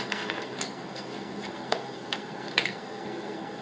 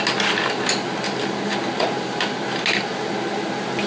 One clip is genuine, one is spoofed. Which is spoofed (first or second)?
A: first